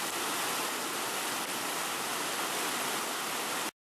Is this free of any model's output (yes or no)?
yes